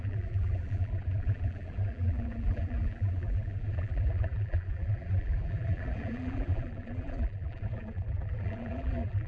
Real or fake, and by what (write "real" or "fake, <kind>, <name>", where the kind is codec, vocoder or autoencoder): fake, vocoder, BigVGAN v2